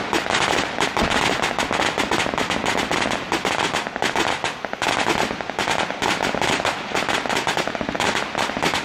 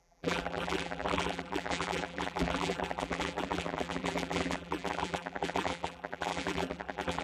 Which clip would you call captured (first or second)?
first